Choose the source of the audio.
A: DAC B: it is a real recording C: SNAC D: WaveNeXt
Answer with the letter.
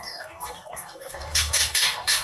A